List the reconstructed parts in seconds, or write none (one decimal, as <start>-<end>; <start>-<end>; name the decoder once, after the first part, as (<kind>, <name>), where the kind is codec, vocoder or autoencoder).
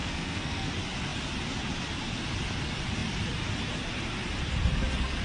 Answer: 0.0-0.7 (codec, SNAC)